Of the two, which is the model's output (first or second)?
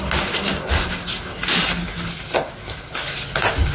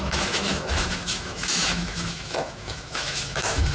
second